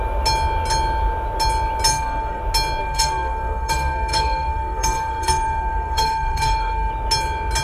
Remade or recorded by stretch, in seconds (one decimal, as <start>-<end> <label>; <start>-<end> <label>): 0.0-1.9 recorded; 1.9-2.4 remade; 2.4-2.8 recorded; 2.8-6.9 remade; 6.9-7.6 recorded